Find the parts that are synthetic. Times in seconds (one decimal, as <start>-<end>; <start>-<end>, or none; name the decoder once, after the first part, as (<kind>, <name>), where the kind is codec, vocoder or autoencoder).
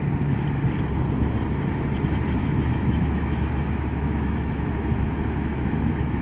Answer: 2.4-6.2 (autoencoder, DAC-VAE)